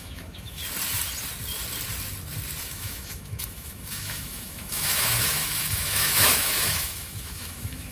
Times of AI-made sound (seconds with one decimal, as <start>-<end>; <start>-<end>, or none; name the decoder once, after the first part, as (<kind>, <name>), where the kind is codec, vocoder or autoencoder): 0.0-0.6 (autoencoder, DAC-VAE); 2.6-7.9

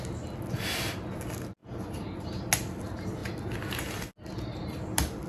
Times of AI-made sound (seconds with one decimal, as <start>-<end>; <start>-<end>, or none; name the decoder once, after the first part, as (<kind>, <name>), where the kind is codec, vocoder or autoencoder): none

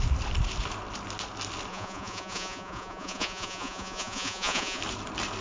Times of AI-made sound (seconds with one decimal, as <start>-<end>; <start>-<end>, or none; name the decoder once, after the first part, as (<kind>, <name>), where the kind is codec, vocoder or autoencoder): 1.7-4.8 (vocoder, Vocos)

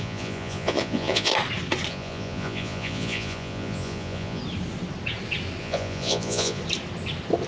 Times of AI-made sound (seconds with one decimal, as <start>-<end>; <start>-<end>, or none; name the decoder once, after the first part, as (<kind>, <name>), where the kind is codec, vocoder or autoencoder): 0.0-1.3 (vocoder, Vocos); 1.9-4.4; 5.6-6.6

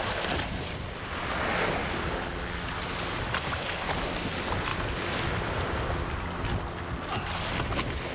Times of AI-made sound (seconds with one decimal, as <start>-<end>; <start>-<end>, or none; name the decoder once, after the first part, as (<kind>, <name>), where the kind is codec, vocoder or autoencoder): 4.7-5.3 (vocoder, BigVGAN v2)

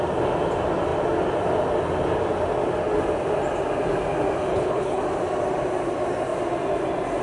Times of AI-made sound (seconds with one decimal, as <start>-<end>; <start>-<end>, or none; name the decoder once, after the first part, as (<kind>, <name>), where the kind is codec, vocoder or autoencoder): 4.5-5.0 (codec, HILCodec)

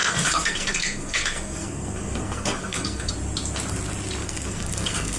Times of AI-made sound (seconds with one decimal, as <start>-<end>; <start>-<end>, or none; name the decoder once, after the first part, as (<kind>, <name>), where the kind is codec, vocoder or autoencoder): 0.0-3.1 (codec, SNAC); 4.2-5.2